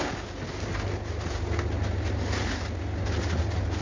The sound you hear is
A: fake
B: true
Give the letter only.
B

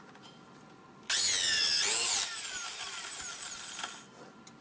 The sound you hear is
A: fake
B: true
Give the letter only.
B